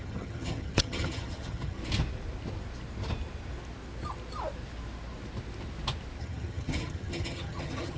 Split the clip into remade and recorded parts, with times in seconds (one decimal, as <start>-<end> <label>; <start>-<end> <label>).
0.0-1.8 remade; 1.8-6.2 recorded; 6.2-8.0 remade